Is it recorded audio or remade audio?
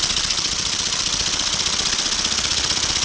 recorded